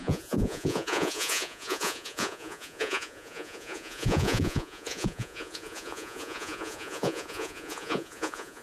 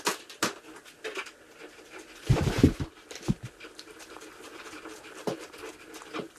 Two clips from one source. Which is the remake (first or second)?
first